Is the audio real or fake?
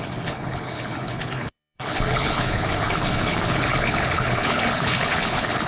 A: fake